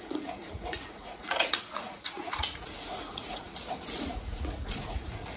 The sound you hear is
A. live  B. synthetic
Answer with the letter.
B